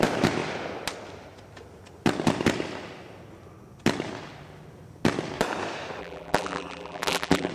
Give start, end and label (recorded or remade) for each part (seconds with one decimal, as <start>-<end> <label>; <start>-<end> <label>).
0.0-6.0 recorded; 6.0-7.5 remade